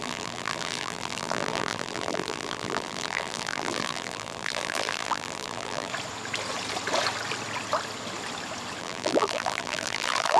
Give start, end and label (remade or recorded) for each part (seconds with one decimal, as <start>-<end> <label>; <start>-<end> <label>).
0.0-5.9 remade; 5.9-8.8 recorded; 8.8-10.4 remade

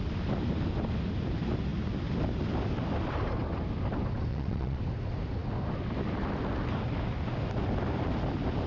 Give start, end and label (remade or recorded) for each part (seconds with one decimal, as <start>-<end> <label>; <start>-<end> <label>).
0.0-4.3 recorded; 4.3-4.8 remade; 4.8-8.7 recorded

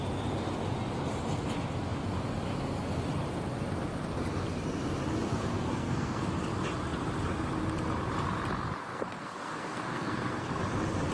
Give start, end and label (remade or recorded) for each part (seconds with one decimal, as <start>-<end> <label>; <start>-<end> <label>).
0.0-5.3 recorded; 5.3-6.3 remade; 6.3-8.8 recorded; 8.8-10.6 remade; 10.6-11.1 recorded

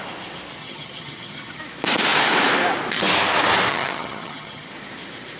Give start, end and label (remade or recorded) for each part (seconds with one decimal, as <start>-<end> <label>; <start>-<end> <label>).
0.0-0.6 recorded; 0.6-1.6 remade; 1.6-3.7 recorded; 3.7-4.7 remade; 4.7-5.4 recorded

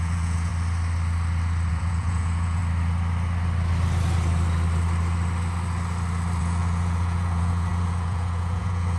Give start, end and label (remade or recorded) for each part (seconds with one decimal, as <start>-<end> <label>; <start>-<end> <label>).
0.0-0.5 remade; 0.5-1.7 recorded; 1.7-2.6 remade; 2.6-6.4 recorded; 6.4-9.0 remade

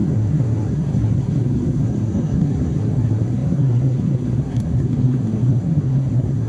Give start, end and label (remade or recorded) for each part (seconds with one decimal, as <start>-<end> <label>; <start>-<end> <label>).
0.0-6.5 remade

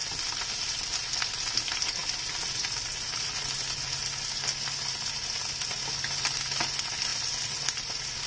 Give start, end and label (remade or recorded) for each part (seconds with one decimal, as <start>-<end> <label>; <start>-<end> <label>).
0.0-8.3 recorded